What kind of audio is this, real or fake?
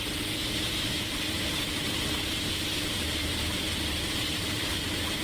fake